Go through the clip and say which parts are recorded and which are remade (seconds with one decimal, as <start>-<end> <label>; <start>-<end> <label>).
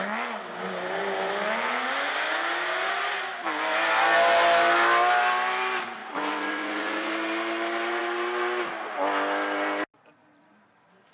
0.0-6.0 recorded; 6.0-7.1 remade; 7.1-11.1 recorded